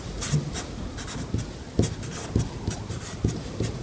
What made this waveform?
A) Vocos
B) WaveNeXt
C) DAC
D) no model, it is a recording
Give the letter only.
D